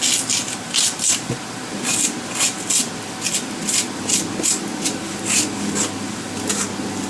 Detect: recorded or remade recorded